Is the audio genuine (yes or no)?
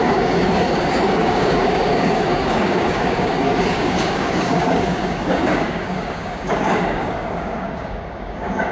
no